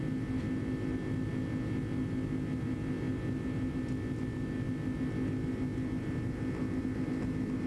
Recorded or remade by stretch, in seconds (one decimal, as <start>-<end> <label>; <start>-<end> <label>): 0.0-7.7 recorded